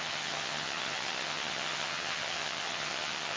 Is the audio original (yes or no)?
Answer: no